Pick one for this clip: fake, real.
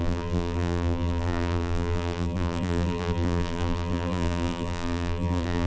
fake